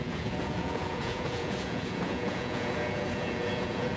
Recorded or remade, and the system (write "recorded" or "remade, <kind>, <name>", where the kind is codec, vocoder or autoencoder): remade, vocoder, Vocos